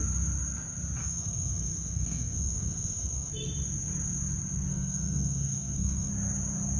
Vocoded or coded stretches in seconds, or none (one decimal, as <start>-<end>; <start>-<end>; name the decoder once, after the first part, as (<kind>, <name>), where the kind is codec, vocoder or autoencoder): 1.0-3.3 (codec, SNAC); 4.7-6.1